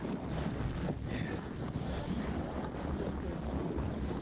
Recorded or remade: recorded